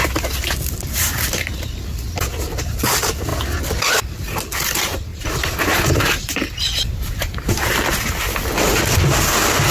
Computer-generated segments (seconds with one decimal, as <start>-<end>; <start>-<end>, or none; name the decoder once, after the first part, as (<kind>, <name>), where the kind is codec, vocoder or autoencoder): 5.1-7.8 (vocoder, BigVGAN v2)